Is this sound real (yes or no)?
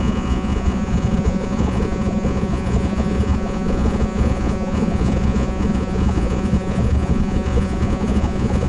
no